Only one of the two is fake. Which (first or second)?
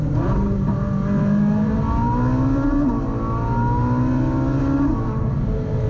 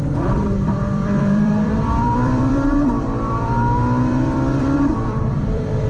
second